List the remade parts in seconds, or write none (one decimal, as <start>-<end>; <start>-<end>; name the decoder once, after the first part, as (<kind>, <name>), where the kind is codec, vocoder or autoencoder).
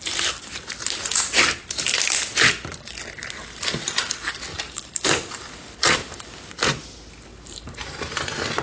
4.5-6.3 (vocoder, BigVGAN v2); 7.3-8.2